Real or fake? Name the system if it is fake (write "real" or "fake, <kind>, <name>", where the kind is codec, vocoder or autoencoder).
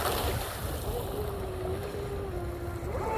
real